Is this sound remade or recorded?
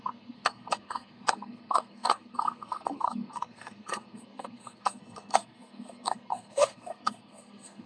remade